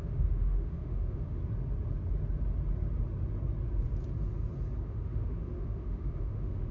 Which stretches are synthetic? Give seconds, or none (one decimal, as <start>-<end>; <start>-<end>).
0.0-1.4; 4.8-6.7